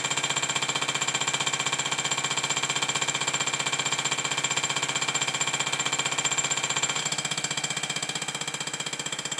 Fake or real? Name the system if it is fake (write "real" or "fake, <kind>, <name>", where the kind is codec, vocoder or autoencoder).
real